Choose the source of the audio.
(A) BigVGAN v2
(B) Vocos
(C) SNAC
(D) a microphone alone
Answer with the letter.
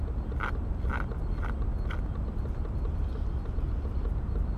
D